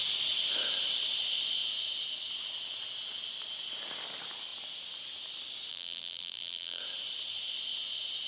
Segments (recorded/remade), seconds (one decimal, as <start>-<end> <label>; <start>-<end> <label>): 0.0-5.7 recorded; 5.7-6.8 remade; 6.8-8.3 recorded